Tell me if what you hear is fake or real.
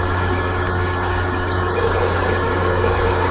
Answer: fake